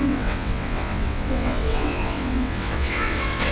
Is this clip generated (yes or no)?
yes